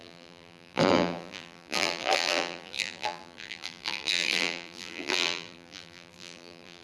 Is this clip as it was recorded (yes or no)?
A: no